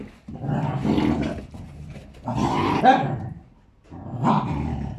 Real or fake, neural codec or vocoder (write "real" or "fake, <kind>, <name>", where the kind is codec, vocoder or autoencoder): real